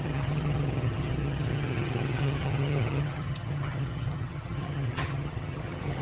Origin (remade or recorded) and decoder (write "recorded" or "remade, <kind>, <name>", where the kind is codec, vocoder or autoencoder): remade, vocoder, HiFi-GAN